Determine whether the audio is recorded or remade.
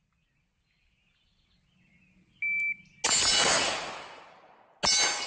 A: recorded